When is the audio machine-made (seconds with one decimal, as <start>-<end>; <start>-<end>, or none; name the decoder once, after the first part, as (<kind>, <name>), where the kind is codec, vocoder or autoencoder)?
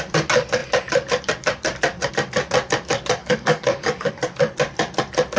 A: 3.2-4.1 (codec, DAC)